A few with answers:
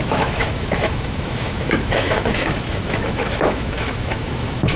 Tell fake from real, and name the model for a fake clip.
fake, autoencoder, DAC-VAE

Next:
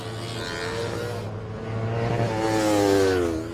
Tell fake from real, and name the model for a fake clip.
real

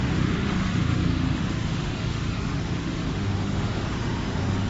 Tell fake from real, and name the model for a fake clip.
fake, autoencoder, DAC-VAE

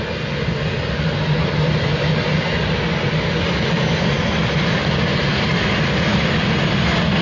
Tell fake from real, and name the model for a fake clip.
real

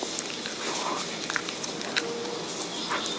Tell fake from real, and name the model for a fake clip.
real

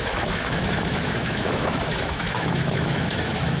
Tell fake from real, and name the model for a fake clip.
fake, autoencoder, DAC-VAE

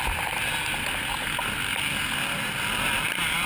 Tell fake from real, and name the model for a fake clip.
real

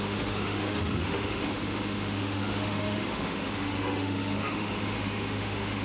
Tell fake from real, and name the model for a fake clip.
fake, autoencoder, DAC-VAE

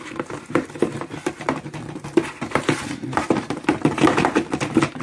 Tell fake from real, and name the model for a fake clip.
real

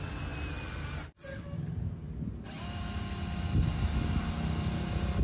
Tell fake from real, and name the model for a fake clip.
real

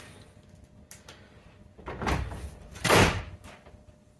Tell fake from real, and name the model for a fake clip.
real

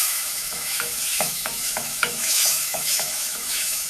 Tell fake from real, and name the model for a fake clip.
fake, autoencoder, DAC-VAE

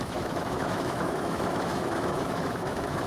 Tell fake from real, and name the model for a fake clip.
fake, autoencoder, DAC-VAE